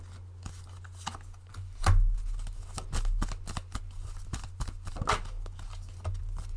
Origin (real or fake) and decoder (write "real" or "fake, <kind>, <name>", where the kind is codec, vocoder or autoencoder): real